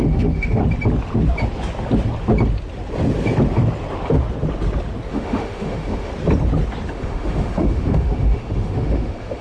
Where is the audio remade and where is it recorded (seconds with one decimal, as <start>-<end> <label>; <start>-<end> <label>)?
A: 0.0-0.6 remade; 0.6-5.1 recorded; 5.1-6.1 remade; 6.1-6.9 recorded; 6.9-9.4 remade